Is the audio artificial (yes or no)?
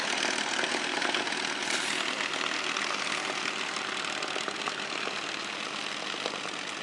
no